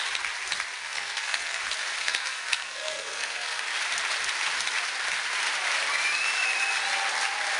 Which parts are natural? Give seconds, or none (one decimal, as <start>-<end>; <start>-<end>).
0.0-0.8; 1.6-2.0; 3.6-7.6